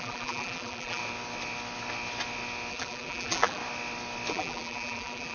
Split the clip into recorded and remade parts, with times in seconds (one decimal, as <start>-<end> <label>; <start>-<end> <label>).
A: 0.0-1.0 remade; 1.0-2.7 recorded; 2.7-3.6 remade; 3.6-4.3 recorded; 4.3-5.3 remade